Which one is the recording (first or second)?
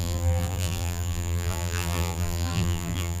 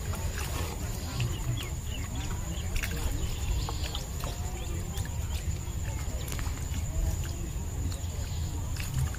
second